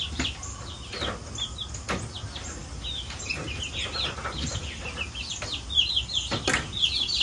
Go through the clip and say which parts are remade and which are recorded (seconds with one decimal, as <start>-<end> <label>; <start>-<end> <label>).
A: 0.0-7.2 recorded